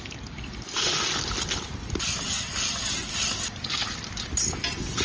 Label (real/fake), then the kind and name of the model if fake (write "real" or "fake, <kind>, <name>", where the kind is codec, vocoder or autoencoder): real